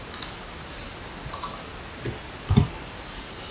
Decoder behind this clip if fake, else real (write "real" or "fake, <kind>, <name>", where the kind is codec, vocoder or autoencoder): real